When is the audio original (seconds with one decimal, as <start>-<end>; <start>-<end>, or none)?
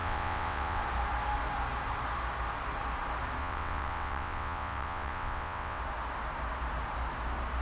0.8-3.4; 5.8-7.6